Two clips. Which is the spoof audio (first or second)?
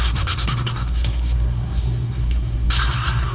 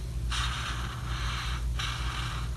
first